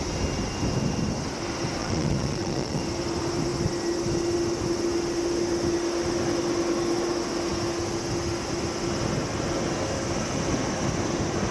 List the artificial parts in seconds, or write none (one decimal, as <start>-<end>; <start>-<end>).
1.8-2.8